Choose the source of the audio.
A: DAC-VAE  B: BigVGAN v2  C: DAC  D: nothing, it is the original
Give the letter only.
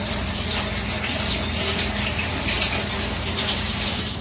D